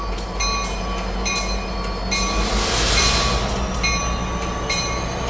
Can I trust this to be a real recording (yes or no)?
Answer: yes